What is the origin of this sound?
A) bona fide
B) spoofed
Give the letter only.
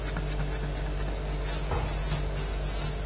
A